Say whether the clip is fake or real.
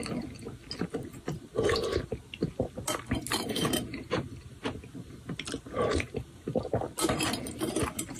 real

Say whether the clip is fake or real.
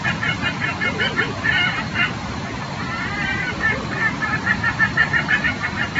real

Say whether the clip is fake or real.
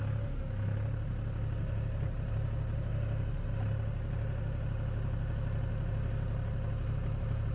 real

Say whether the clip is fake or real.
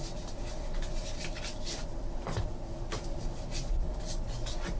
real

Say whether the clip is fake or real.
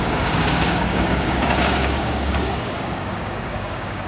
fake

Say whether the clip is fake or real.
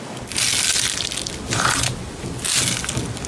real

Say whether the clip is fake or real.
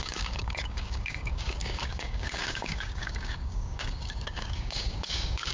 fake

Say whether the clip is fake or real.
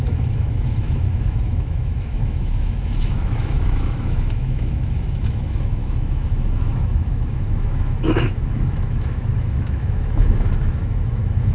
fake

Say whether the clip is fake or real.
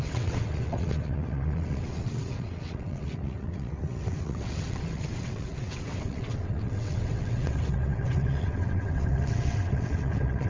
fake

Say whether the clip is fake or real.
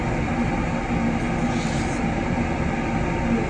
real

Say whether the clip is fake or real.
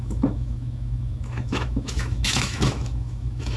fake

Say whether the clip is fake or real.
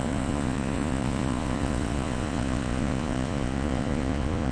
fake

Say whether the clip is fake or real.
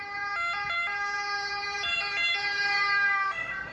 fake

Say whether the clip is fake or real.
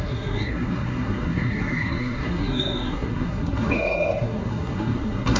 fake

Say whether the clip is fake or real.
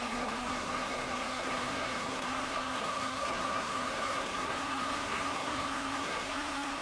fake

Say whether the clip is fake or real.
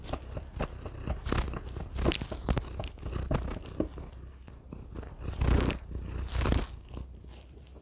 real